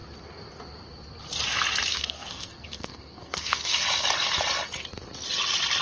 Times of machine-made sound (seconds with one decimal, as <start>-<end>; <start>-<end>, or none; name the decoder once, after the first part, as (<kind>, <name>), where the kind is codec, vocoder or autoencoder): 1.9-3.8 (codec, SNAC)